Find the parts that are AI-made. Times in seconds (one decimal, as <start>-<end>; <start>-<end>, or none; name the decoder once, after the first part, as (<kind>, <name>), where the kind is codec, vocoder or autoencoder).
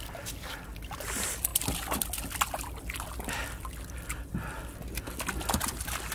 none